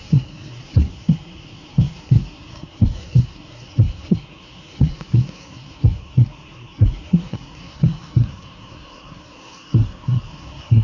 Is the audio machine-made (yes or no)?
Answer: yes